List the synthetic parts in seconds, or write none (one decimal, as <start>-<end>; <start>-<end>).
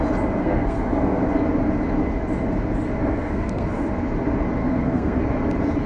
0.4-1.2; 3.0-3.8; 4.6-5.2